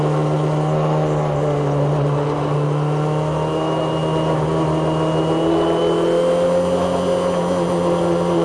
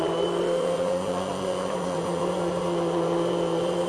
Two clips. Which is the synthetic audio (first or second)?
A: second